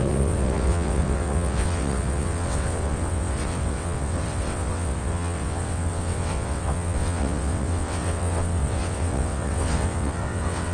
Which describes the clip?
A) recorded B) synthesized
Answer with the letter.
B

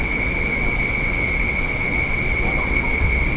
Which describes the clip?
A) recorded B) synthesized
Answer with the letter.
B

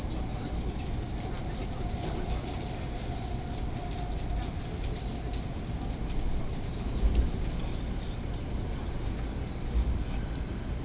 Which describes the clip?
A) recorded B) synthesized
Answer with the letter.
A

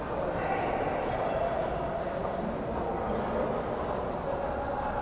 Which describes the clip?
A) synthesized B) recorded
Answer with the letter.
B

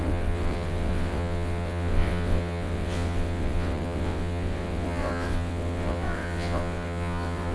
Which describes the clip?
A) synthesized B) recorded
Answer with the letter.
A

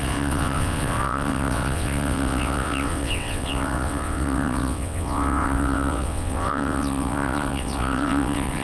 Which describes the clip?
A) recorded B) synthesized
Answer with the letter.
B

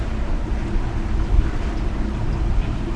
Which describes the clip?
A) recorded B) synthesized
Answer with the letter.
A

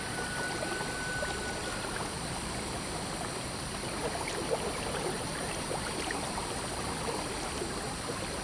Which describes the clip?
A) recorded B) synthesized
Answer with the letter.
A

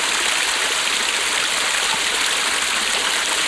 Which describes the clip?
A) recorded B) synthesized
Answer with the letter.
A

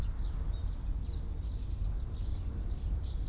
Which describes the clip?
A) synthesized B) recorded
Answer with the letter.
B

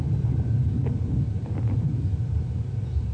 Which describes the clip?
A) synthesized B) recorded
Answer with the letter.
B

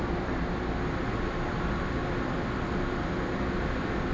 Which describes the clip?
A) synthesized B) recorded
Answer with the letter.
B